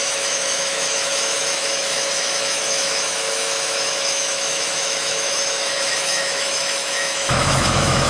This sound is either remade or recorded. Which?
remade